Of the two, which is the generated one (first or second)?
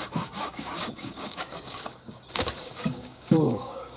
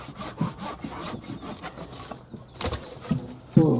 first